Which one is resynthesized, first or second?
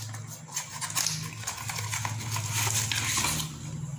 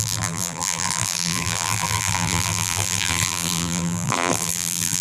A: second